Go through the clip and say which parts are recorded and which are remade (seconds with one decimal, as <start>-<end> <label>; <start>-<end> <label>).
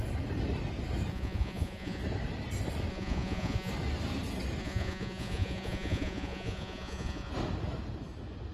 0.0-1.1 recorded; 1.1-2.0 remade; 2.0-2.9 recorded; 2.9-3.7 remade; 3.7-4.6 recorded; 4.6-7.3 remade; 7.3-8.5 recorded